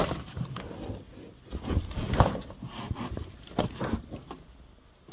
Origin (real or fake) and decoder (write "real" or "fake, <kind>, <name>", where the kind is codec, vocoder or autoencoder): real